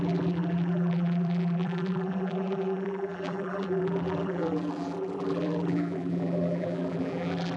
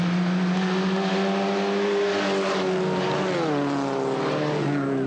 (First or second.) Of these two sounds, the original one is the second